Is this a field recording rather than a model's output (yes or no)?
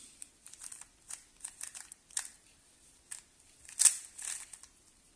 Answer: yes